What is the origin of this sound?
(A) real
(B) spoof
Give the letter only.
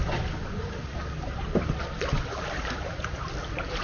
A